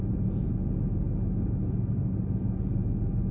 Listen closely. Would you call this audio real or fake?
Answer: real